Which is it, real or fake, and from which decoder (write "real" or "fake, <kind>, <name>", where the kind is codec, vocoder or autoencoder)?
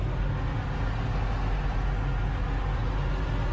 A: real